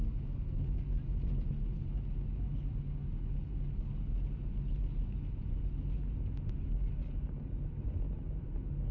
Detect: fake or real real